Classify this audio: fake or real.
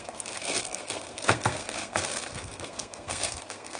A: fake